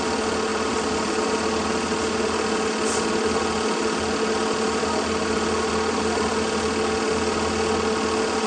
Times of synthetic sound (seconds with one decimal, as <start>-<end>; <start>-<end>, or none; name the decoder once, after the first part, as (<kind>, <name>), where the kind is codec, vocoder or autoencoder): 0.5-1.2 (vocoder, BigVGAN v2)